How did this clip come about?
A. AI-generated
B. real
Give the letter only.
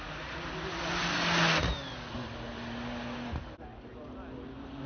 B